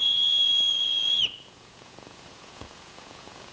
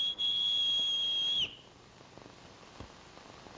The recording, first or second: second